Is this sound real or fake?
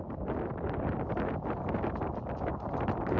real